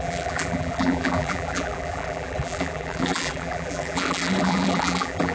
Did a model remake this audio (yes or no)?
yes